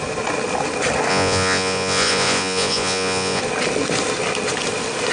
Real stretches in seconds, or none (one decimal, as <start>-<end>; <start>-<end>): 0.0-1.1; 3.4-5.1